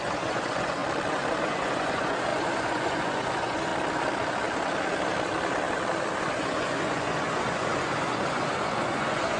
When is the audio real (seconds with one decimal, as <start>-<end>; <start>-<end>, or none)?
0.8-1.4; 3.7-6.2